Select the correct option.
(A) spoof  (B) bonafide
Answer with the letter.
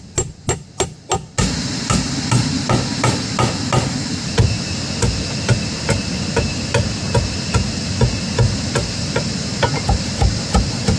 B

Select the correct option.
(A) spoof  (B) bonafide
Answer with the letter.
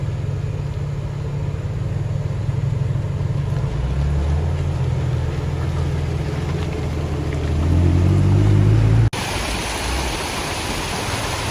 B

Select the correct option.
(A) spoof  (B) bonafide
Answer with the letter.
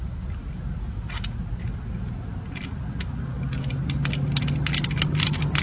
B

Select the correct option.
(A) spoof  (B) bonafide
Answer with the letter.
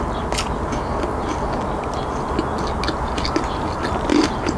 B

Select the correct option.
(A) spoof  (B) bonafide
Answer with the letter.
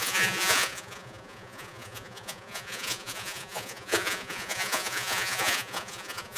A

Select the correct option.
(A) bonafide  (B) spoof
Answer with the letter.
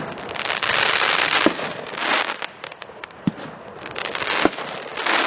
A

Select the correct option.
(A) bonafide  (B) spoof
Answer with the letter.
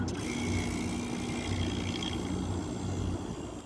A